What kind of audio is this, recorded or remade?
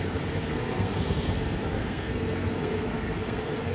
remade